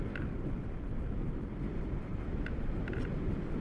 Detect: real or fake real